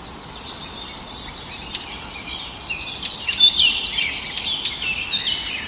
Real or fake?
real